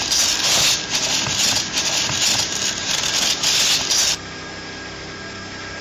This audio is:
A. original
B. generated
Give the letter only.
A